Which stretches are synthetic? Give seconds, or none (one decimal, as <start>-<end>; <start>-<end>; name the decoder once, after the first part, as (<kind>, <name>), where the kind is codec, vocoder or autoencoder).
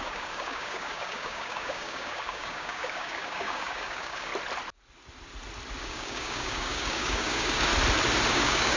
0.0-4.3 (codec, DAC); 5.8-7.7; 8.3-8.8